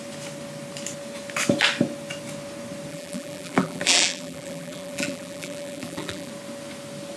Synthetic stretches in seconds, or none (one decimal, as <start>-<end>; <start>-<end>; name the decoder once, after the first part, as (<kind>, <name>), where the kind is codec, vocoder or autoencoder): 2.9-6.3 (vocoder, BigVGAN v2)